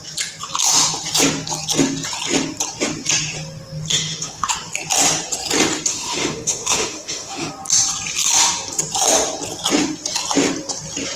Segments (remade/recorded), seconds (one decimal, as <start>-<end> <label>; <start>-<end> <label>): 0.0-3.9 recorded; 3.9-4.5 remade; 4.5-5.9 recorded; 5.9-7.5 remade; 7.5-11.2 recorded